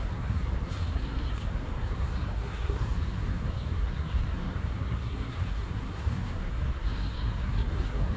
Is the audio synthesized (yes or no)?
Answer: yes